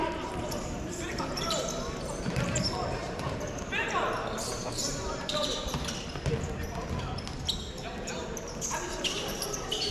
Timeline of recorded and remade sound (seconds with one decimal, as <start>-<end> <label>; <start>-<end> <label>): 0.0-1.2 remade; 1.2-3.0 recorded; 3.0-5.9 remade; 5.9-9.9 recorded